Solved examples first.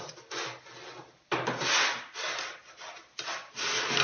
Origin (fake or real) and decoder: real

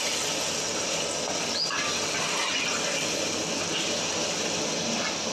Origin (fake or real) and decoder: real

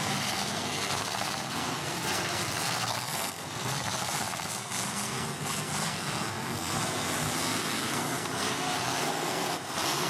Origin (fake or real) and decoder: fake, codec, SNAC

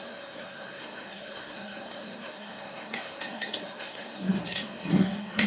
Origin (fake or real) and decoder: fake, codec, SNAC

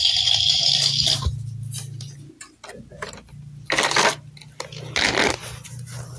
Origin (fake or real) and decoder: real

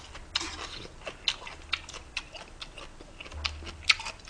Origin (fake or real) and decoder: real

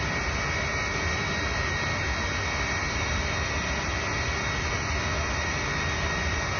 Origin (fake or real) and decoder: real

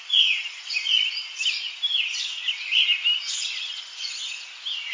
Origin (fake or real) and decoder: real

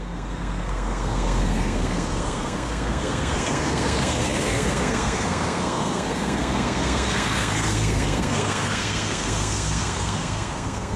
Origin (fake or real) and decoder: fake, codec, SNAC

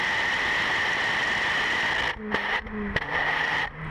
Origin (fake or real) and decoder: real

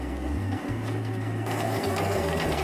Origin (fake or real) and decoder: fake, codec, SNAC